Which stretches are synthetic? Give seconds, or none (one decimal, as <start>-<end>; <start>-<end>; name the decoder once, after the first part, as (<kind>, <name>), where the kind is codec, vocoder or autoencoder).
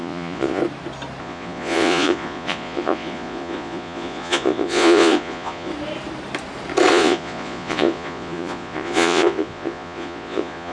0.0-0.6 (vocoder, Vocos); 1.2-5.7; 6.9-10.7